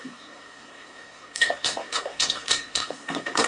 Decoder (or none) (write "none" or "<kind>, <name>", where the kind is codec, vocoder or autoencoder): codec, SNAC